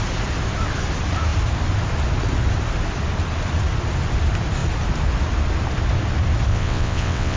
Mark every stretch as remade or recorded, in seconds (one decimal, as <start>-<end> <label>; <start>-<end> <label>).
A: 0.0-6.5 recorded; 6.5-7.4 remade